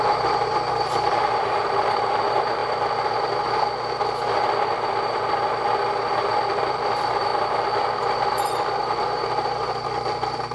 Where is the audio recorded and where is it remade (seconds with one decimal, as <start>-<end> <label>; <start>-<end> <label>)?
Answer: 0.0-2.6 remade; 2.6-6.7 recorded; 6.7-7.3 remade; 7.3-8.0 recorded; 8.0-10.5 remade